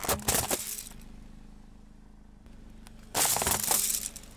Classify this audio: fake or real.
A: real